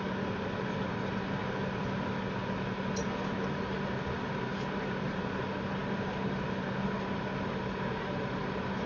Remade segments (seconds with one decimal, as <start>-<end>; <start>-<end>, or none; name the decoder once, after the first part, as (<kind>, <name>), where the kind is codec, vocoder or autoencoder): none